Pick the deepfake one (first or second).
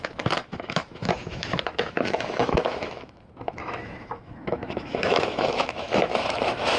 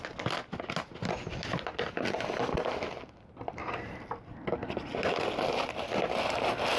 first